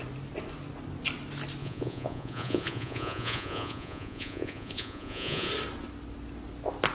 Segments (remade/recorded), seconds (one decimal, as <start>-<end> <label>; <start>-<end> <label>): 0.0-1.6 recorded; 1.6-5.5 remade; 5.5-6.9 recorded